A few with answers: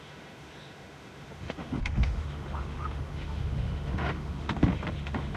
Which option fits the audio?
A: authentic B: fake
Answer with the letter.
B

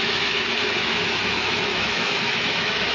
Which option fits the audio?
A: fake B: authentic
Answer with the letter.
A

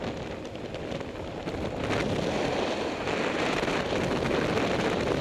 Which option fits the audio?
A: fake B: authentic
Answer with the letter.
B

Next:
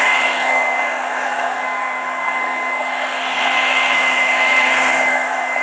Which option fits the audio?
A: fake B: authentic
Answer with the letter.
A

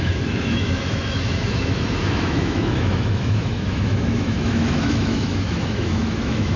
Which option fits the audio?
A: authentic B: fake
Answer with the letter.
B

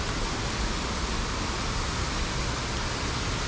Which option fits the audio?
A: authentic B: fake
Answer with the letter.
A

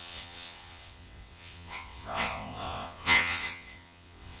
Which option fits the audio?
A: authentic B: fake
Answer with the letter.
B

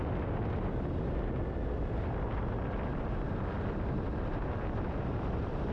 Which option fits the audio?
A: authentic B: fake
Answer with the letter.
A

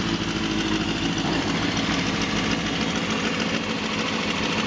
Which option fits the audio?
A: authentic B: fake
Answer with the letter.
A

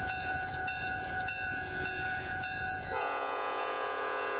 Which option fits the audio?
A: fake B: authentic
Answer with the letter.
A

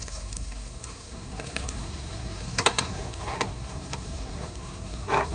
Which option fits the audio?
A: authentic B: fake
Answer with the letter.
B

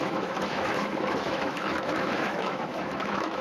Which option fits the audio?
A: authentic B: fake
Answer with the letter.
B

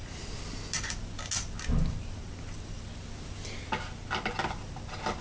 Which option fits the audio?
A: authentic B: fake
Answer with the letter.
A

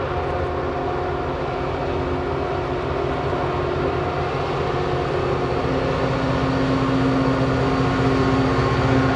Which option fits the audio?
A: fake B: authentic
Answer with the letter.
B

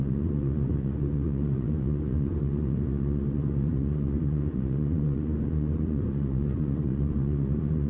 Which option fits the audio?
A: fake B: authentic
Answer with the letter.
A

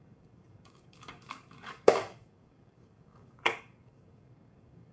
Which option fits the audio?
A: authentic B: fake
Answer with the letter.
B